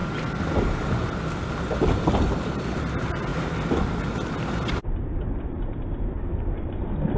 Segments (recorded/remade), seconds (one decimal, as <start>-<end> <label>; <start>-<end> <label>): 0.0-7.2 recorded